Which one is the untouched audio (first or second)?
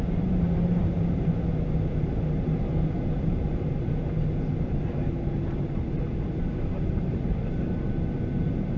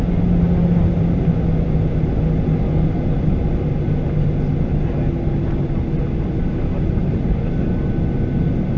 second